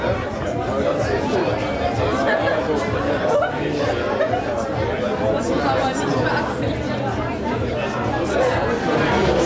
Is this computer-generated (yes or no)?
no